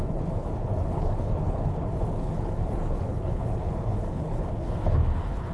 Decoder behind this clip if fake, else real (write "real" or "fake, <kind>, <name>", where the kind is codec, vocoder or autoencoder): fake, codec, HILCodec